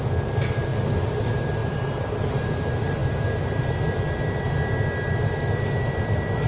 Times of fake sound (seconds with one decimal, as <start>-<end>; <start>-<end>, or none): none